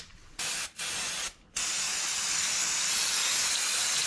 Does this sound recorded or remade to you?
recorded